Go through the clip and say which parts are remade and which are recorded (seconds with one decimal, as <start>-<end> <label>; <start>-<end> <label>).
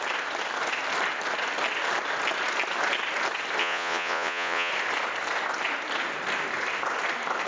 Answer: 0.0-3.6 recorded; 3.6-4.7 remade; 4.7-7.5 recorded